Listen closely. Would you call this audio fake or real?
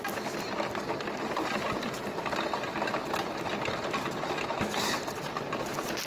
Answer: real